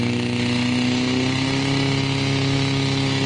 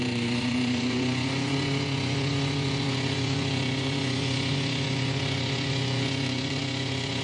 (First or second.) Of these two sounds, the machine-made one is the second